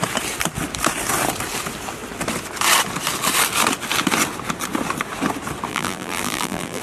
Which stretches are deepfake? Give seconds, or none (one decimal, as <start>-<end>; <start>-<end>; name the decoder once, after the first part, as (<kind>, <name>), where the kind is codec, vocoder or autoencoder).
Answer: 5.7-6.8 (vocoder, BigVGAN v2)